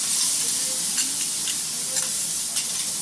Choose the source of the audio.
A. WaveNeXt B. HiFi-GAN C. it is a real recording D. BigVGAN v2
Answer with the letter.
C